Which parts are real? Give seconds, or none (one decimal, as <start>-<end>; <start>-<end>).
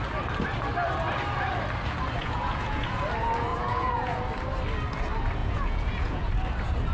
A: 0.0-2.2; 3.0-3.5; 4.2-5.4; 6.3-6.9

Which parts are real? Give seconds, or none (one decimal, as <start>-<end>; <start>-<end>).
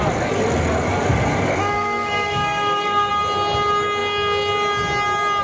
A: 0.0-1.5; 3.1-5.4